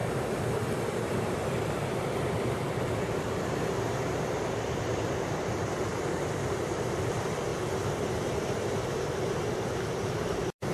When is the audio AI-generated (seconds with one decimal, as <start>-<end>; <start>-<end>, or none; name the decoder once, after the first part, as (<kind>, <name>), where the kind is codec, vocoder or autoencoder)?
2.3-7.5 (vocoder, BigVGAN v2); 9.4-10.7